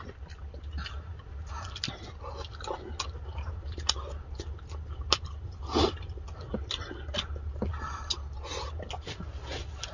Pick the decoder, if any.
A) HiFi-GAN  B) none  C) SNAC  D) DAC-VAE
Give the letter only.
B